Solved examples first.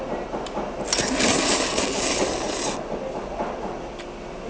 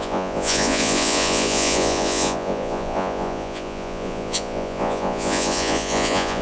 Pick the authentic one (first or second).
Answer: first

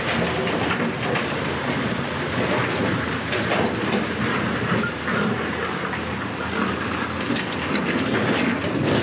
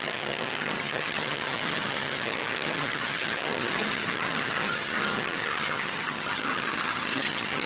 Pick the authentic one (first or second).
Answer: first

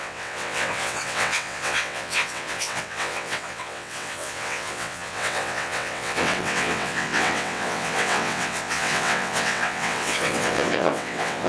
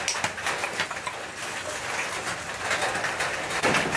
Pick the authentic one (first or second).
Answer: second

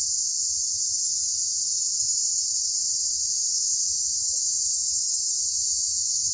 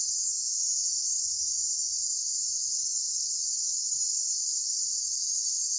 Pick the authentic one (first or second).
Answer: first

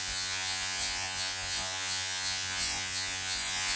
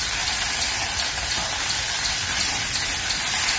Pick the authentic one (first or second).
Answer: second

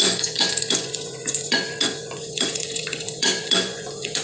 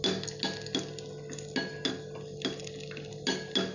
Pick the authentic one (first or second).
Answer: second